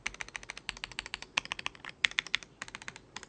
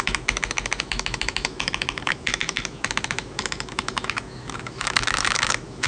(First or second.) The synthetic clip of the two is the second